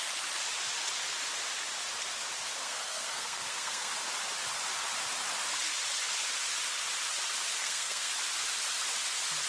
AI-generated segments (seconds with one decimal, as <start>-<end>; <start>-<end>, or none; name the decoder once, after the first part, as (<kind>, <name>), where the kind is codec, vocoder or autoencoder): 2.6-3.9 (codec, SNAC); 7.6-8.1